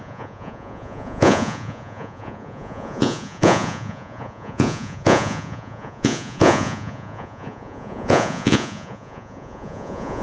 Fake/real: fake